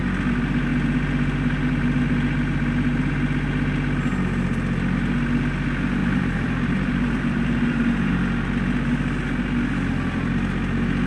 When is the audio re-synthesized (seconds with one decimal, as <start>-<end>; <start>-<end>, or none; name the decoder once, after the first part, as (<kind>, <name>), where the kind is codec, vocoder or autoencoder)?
6.0-8.2 (vocoder, BigVGAN v2)